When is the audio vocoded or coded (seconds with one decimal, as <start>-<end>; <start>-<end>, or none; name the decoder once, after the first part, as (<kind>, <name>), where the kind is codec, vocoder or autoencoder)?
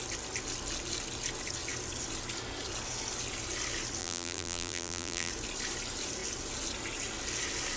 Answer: 4.0-5.3 (vocoder, BigVGAN v2)